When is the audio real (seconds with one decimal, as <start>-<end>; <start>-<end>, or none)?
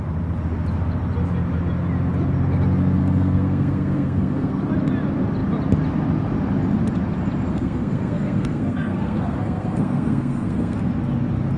0.0-3.0; 4.6-7.5; 10.9-11.6